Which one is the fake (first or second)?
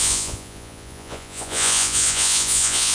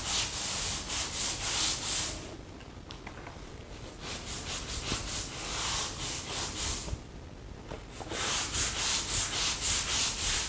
first